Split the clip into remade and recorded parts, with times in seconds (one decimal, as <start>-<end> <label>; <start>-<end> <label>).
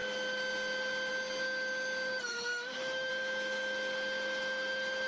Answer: 0.0-2.3 recorded; 2.3-3.1 remade; 3.1-5.1 recorded